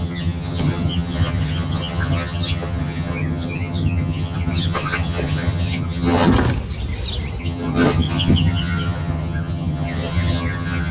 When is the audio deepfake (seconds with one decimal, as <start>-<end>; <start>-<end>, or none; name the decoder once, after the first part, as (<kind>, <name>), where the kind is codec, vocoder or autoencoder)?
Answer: 0.0-6.3 (vocoder, HiFi-GAN); 7.4-10.9